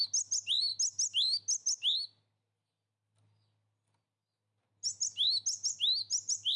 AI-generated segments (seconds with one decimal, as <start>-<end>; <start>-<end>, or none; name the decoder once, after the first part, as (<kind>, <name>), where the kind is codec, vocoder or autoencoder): none